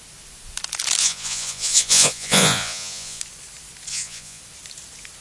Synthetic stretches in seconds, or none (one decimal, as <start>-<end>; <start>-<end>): 1.0-3.2; 3.9-4.4